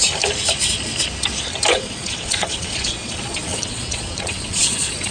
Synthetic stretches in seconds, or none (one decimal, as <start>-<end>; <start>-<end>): 1.7-5.1

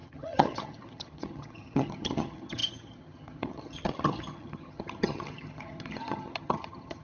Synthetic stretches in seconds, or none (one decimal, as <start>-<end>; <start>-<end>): 0.0-7.0

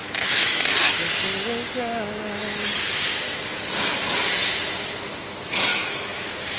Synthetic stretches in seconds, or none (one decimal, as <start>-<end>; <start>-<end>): 0.0-0.7; 5.7-6.6

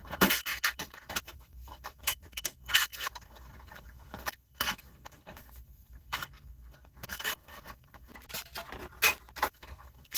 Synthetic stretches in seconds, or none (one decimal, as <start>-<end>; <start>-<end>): 0.0-8.1; 9.5-10.2

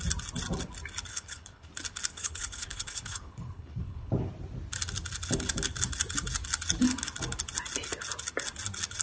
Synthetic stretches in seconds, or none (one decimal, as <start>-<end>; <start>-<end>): 1.1-1.7; 2.1-4.1

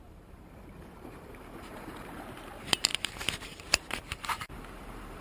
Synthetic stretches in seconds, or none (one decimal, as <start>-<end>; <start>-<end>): 0.0-5.2

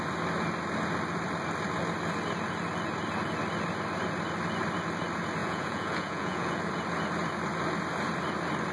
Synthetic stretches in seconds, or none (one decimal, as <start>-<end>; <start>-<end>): 5.4-6.6